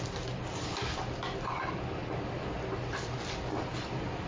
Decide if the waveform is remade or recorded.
recorded